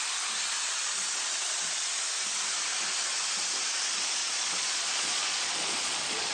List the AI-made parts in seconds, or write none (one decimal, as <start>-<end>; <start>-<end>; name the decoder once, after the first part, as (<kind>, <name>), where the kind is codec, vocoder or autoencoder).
4.2-6.3 (vocoder, Vocos)